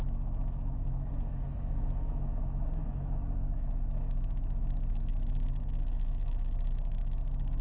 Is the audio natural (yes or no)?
no